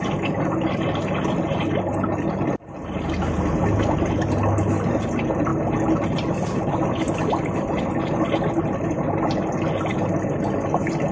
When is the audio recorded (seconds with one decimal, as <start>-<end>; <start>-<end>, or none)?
0.0-11.1